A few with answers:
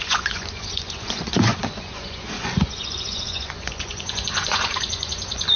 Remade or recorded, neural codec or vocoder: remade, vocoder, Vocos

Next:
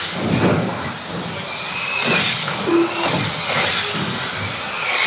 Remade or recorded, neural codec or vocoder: recorded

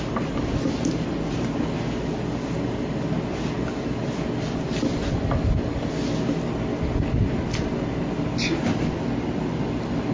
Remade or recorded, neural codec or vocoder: recorded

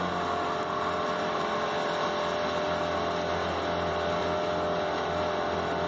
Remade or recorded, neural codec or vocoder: recorded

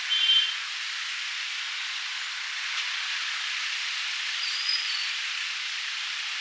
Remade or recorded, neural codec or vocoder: recorded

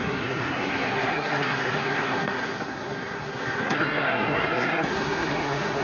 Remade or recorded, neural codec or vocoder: remade, codec, SNAC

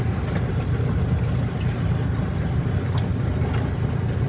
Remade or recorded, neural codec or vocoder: recorded